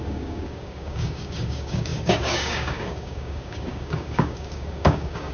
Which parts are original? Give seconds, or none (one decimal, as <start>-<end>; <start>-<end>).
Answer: none